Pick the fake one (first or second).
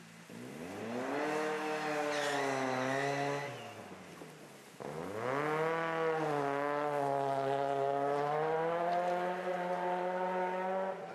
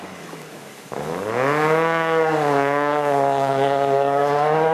second